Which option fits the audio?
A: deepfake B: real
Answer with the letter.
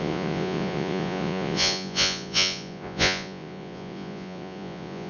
A